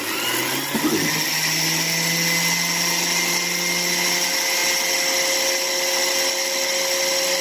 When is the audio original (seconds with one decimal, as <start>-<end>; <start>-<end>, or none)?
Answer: 0.0-7.4